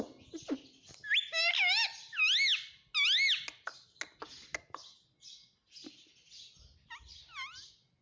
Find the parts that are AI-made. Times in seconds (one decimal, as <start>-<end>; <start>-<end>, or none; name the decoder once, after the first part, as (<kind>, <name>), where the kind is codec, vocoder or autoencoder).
none